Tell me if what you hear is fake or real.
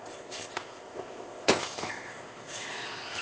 fake